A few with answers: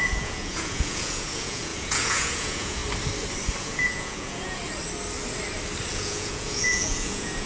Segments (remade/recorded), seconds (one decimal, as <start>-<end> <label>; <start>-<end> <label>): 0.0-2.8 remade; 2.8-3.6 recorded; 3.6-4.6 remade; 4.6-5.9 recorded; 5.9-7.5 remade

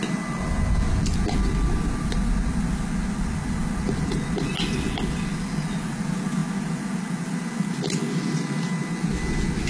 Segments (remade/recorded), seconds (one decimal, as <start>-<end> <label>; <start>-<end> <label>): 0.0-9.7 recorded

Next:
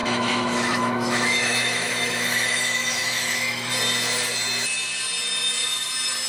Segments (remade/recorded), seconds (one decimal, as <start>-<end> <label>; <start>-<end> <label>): 0.0-3.7 remade; 3.7-6.3 recorded

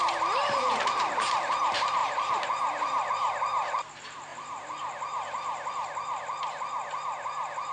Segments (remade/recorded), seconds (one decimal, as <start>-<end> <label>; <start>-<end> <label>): 0.0-7.7 recorded

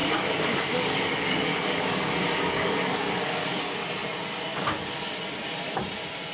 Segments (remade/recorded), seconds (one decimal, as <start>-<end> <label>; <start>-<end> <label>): 0.0-3.6 remade; 3.6-6.3 recorded